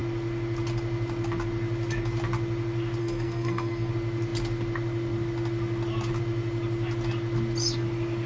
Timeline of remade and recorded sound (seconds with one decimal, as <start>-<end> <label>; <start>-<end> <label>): 0.0-3.0 recorded; 3.0-3.9 remade; 3.9-8.3 recorded